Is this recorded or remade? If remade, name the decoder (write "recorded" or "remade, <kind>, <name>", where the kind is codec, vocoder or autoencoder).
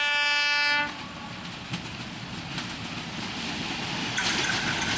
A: recorded